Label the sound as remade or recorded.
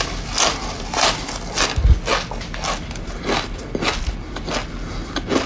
recorded